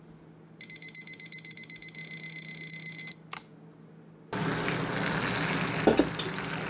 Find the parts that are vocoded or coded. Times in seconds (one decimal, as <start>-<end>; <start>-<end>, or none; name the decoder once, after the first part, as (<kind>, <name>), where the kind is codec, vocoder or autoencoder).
none